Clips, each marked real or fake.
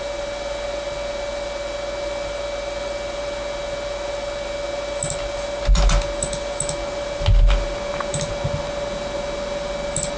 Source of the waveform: real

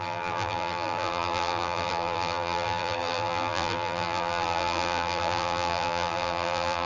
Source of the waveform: fake